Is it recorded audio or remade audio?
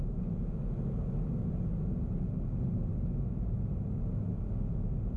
recorded